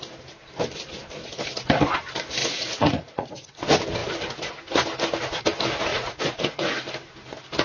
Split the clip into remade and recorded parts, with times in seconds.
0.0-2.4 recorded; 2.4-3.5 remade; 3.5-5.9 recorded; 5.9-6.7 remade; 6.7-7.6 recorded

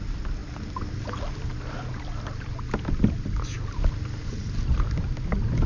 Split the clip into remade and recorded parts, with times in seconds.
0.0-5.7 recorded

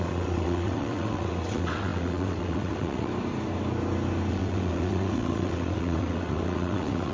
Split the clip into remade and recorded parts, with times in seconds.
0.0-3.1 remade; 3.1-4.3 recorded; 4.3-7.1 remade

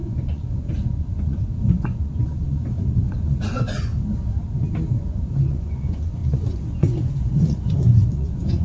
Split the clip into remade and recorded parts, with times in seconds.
0.0-3.9 remade; 3.9-4.9 recorded; 4.9-8.6 remade

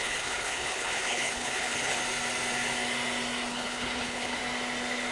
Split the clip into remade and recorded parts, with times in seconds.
0.0-2.0 remade; 2.0-3.5 recorded; 3.5-4.4 remade; 4.4-5.1 recorded

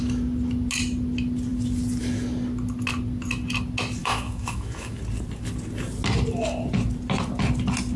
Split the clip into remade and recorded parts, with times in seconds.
0.0-4.0 recorded; 4.0-5.0 remade; 5.0-8.0 recorded

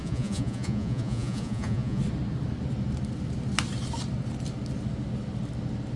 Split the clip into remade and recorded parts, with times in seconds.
0.0-2.0 remade; 2.0-6.0 recorded

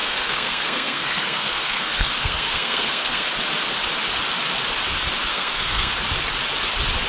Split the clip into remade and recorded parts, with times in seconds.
0.0-3.3 remade; 3.3-5.3 recorded; 5.3-5.9 remade; 5.9-7.1 recorded